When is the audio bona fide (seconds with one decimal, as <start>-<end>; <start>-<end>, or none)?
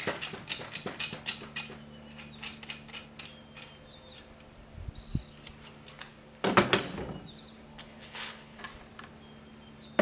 0.0-7.7; 8.6-10.0